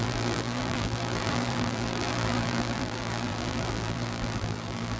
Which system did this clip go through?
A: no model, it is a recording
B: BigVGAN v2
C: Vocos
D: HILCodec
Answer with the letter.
B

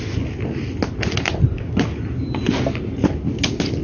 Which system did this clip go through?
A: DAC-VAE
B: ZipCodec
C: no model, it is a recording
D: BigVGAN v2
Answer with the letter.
C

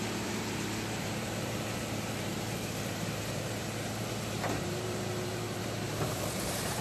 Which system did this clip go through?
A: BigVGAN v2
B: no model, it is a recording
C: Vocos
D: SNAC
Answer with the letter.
A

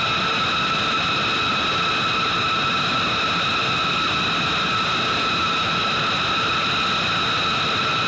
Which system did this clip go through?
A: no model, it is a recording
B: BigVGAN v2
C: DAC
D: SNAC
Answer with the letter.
A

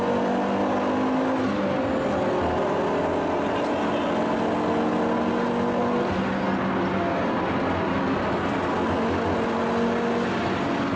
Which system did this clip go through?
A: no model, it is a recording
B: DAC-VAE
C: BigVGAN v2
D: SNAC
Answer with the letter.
A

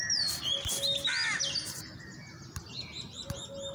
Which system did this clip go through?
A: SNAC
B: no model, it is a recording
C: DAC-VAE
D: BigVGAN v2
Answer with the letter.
B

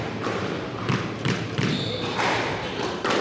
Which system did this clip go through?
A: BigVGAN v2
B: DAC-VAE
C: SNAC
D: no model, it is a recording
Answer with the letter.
A